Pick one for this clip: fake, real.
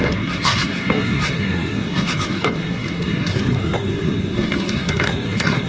fake